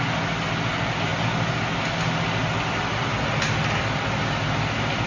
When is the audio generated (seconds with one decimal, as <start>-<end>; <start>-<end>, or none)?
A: none